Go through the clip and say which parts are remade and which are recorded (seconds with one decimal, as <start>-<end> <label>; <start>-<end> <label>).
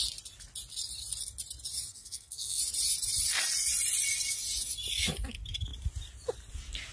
0.0-1.9 recorded; 1.9-2.6 remade; 2.6-6.9 recorded